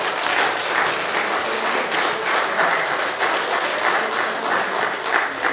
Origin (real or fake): real